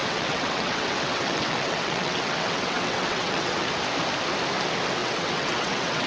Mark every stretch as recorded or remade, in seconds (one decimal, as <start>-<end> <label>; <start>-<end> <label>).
0.0-3.7 remade; 3.7-5.0 recorded; 5.0-6.1 remade